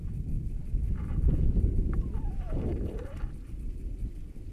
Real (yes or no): yes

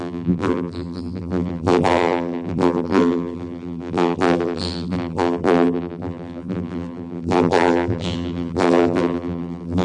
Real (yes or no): no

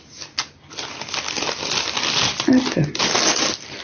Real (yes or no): yes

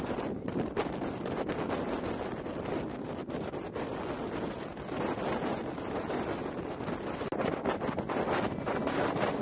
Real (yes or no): yes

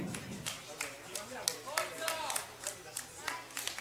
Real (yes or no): yes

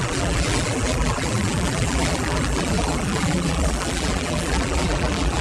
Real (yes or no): no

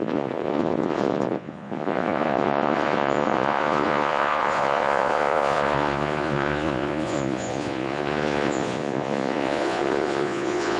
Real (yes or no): no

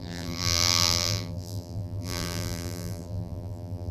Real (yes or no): no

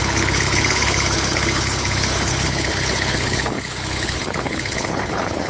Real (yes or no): no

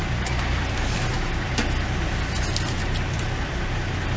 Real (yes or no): yes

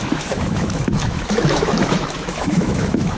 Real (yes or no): no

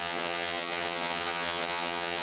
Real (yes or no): no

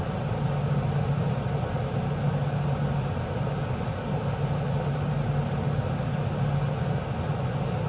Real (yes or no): yes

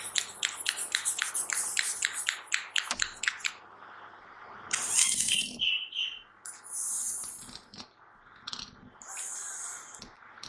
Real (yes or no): yes